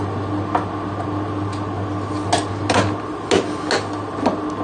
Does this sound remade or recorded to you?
recorded